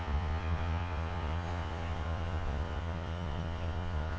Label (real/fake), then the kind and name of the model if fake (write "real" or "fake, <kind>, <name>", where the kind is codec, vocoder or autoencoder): fake, vocoder, Vocos